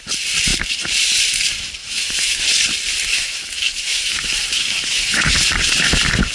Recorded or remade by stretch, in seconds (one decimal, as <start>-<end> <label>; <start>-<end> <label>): 0.0-1.8 recorded; 1.8-2.4 remade; 2.4-3.1 recorded; 3.1-5.3 remade; 5.3-6.3 recorded